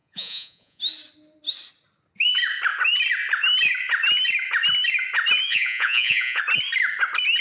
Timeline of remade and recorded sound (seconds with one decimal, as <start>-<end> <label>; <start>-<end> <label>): 0.0-0.8 remade; 0.8-5.5 recorded; 5.5-6.4 remade; 6.4-7.4 recorded